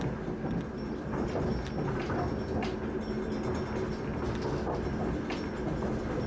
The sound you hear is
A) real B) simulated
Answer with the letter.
A